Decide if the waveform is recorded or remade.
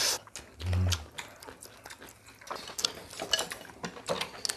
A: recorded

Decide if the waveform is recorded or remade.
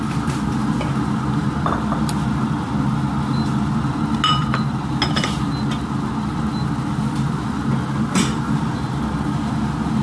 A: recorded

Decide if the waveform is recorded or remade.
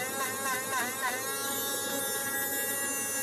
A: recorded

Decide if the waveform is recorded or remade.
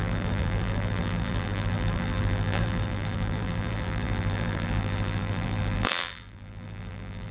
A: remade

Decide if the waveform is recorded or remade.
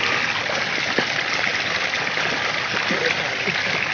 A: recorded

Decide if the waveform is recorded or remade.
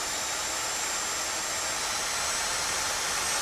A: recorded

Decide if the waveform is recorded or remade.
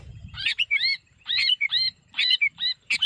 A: remade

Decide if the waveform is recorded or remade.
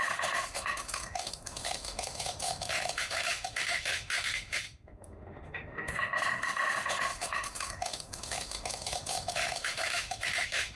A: remade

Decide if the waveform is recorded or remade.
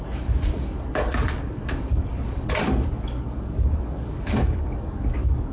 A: remade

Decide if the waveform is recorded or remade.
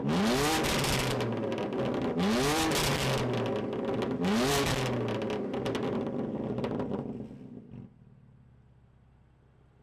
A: recorded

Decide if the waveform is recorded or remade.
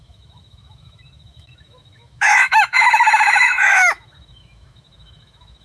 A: remade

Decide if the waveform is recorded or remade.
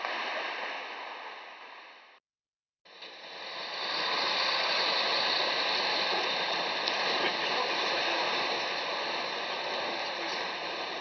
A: recorded